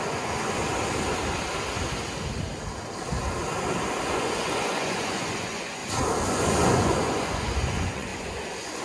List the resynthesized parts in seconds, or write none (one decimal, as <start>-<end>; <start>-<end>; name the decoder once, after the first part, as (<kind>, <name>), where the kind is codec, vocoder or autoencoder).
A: 0.0-0.6 (vocoder, Vocos); 4.1-5.8; 6.3-8.8